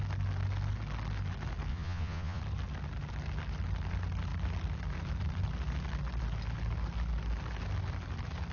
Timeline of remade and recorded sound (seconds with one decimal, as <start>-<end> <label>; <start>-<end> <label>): 0.0-1.7 recorded; 1.7-2.4 remade; 2.4-8.5 recorded